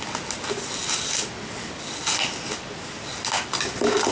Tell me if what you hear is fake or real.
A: real